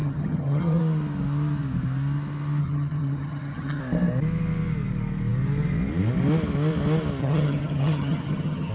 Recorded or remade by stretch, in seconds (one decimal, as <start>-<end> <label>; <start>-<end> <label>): 0.0-0.8 remade; 0.8-2.6 recorded; 2.6-3.8 remade; 3.8-7.2 recorded; 7.2-8.7 remade

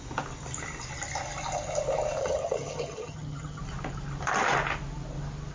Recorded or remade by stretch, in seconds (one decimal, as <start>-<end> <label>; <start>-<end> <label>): 0.0-2.2 recorded; 2.2-3.6 remade; 3.6-5.5 recorded

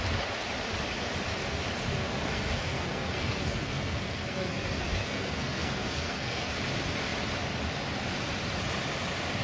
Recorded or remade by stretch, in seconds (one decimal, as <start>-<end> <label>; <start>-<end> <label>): 0.0-2.0 recorded; 2.0-6.5 remade; 6.5-9.4 recorded

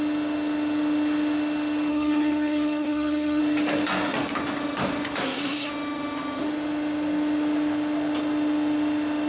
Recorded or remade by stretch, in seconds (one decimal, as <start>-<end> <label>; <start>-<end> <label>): 0.0-1.9 recorded; 1.9-3.4 remade; 3.4-5.2 recorded; 5.2-5.7 remade; 5.7-9.3 recorded